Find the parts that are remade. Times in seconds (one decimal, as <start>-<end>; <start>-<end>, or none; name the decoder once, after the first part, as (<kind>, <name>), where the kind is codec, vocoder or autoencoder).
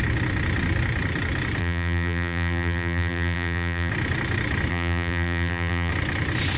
1.6-3.9 (vocoder, BigVGAN v2); 4.7-5.9